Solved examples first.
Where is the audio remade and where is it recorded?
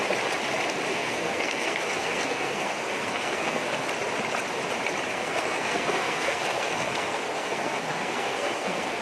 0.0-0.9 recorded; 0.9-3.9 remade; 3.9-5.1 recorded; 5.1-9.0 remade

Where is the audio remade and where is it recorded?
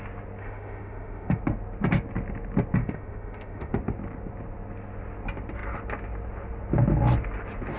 0.0-0.4 recorded; 0.4-1.4 remade; 1.4-2.8 recorded; 2.8-3.7 remade; 3.7-7.8 recorded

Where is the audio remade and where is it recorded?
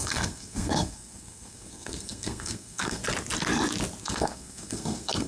0.0-3.0 remade; 3.0-4.0 recorded; 4.0-5.3 remade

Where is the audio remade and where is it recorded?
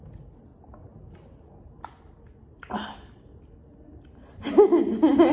0.0-5.3 recorded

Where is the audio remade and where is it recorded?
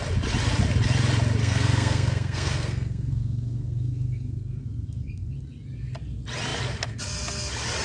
0.0-1.4 recorded; 1.4-5.3 remade; 5.3-7.8 recorded